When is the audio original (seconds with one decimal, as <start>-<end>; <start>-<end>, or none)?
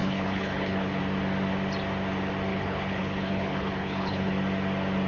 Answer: 1.0-2.5; 4.3-5.1